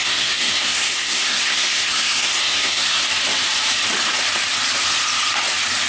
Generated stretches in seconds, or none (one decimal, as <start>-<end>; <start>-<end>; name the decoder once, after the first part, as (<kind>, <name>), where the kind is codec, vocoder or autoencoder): 0.0-3.1 (codec, SNAC)